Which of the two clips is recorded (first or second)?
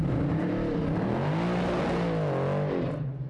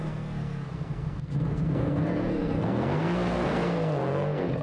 first